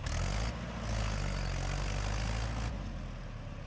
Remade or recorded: recorded